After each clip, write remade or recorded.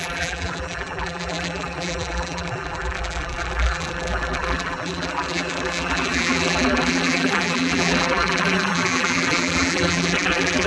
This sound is remade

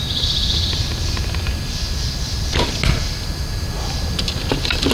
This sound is recorded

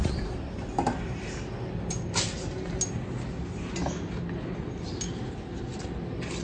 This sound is recorded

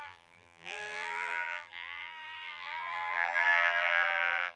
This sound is remade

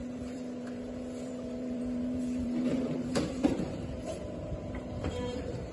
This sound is remade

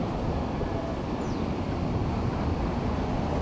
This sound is recorded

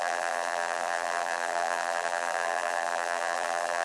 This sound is remade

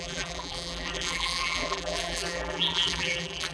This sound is remade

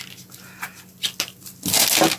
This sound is recorded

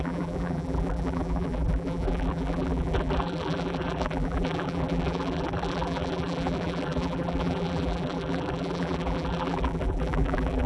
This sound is remade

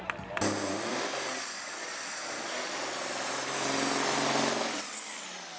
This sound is recorded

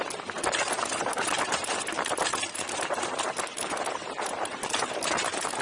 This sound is remade